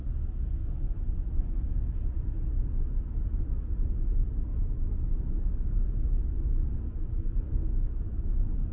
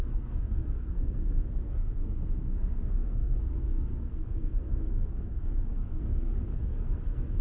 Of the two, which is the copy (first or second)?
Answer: second